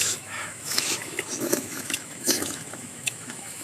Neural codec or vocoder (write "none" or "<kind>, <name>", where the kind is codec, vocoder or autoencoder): autoencoder, DAC-VAE